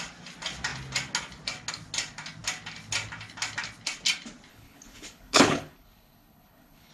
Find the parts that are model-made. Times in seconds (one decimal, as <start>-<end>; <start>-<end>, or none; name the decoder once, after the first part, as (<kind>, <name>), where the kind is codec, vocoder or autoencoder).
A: 4.5-6.9 (codec, HILCodec)